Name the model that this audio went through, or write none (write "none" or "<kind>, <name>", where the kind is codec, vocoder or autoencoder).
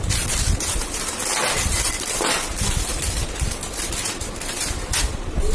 none